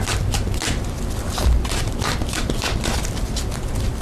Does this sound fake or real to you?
real